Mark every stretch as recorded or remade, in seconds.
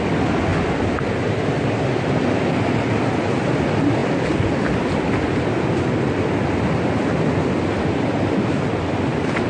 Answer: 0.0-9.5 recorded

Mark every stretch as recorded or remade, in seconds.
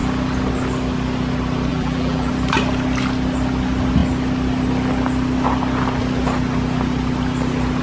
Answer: 0.0-1.7 recorded; 1.7-2.3 remade; 2.3-7.8 recorded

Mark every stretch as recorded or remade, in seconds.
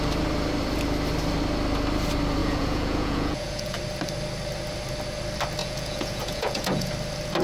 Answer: 0.0-2.4 recorded; 2.4-3.8 remade; 3.8-5.6 recorded; 5.6-6.9 remade; 6.9-7.4 recorded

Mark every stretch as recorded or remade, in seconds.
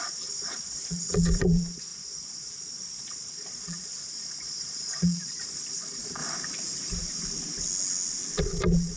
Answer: 0.0-6.2 remade; 6.2-8.4 recorded; 8.4-9.0 remade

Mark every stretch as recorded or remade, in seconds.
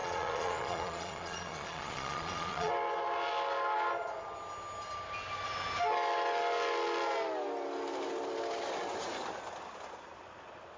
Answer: 0.0-2.7 remade; 2.7-10.8 recorded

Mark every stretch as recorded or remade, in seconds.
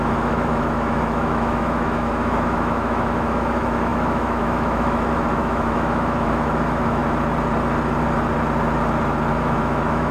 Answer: 0.0-7.0 remade; 7.0-9.3 recorded; 9.3-10.1 remade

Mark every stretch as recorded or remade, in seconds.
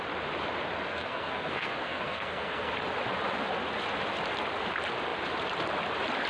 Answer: 0.0-0.9 recorded; 0.9-2.7 remade; 2.7-6.3 recorded